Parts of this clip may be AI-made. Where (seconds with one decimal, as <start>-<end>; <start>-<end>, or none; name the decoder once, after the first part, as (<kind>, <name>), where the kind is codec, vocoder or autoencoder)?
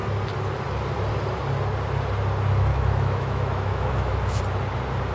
2.7-4.4 (autoencoder, DAC-VAE)